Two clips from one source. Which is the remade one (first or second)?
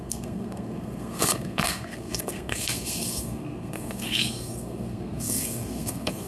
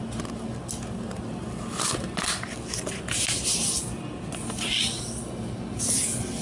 first